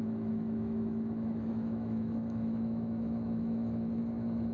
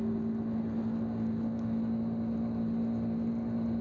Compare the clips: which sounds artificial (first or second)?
first